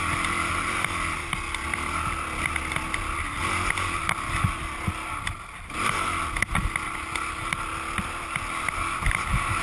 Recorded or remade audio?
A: recorded